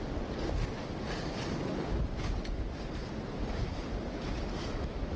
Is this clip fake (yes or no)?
no